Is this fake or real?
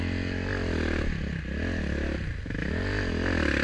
real